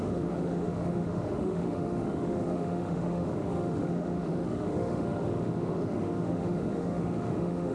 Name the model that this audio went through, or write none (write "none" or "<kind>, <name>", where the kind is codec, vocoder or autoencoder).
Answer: autoencoder, DAC-VAE